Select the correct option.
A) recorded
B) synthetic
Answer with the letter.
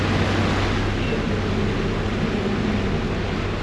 A